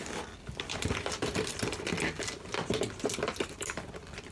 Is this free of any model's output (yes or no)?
yes